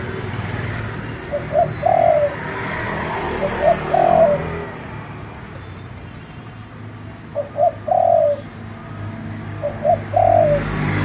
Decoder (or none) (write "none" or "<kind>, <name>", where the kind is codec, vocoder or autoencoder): none